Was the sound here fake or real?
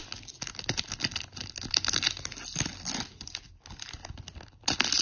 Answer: real